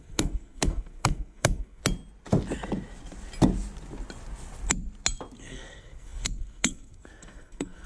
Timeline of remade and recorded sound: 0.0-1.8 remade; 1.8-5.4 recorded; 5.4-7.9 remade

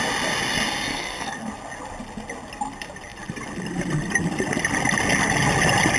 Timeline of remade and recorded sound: 0.0-0.9 recorded; 0.9-1.5 remade; 1.5-6.0 recorded